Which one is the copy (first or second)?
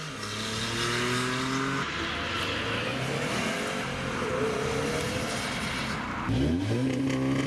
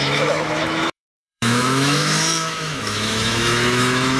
second